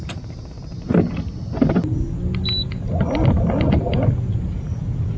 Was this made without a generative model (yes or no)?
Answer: yes